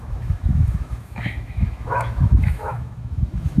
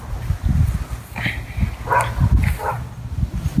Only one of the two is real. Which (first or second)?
second